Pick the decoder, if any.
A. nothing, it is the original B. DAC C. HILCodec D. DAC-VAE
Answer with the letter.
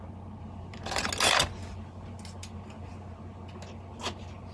A